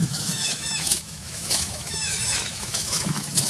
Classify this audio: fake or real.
fake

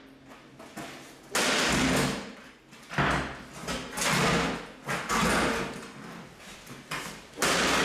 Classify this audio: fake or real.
real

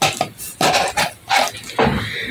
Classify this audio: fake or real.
real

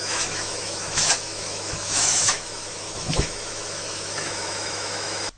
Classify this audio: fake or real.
fake